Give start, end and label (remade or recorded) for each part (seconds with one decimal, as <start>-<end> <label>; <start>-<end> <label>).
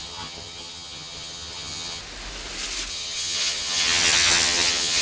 0.0-2.0 remade; 2.0-2.9 recorded; 2.9-5.0 remade